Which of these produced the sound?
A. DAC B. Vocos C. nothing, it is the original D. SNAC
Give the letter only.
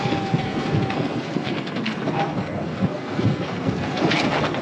D